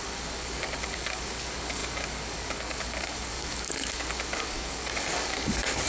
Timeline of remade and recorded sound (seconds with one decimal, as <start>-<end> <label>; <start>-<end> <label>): 0.0-5.9 remade